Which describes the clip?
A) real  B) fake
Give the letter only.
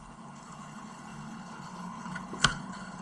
B